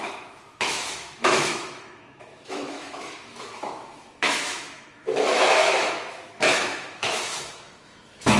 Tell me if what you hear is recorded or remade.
remade